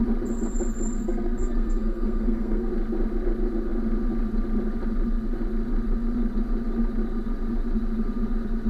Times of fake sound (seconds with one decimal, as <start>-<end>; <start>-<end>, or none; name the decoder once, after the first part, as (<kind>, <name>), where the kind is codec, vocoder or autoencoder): 1.0-2.7 (codec, SNAC)